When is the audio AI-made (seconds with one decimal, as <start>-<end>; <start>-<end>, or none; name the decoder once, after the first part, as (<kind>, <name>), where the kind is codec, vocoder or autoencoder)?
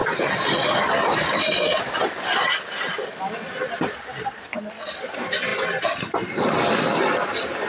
none